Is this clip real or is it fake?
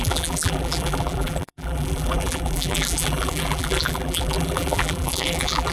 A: fake